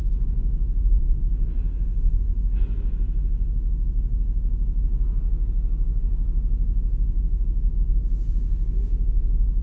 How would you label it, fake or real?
real